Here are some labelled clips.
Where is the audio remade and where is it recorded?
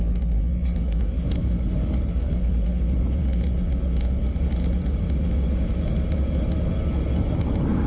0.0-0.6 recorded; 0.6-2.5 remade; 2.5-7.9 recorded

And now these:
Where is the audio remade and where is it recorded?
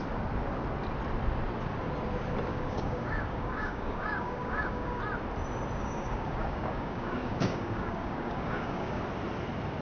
0.0-2.5 recorded; 2.5-5.0 remade; 5.0-5.8 recorded; 5.8-9.0 remade; 9.0-9.8 recorded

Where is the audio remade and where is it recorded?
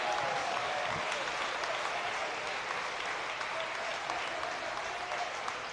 0.0-0.4 recorded; 0.4-1.0 remade; 1.0-5.7 recorded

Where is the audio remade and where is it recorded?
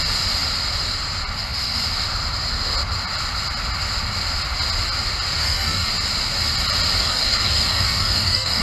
0.0-5.4 recorded; 5.4-5.9 remade; 5.9-7.0 recorded; 7.0-8.6 remade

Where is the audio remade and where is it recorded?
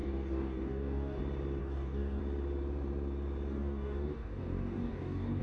0.0-1.2 remade; 1.2-1.6 recorded; 1.6-2.2 remade; 2.2-3.5 recorded; 3.5-5.4 remade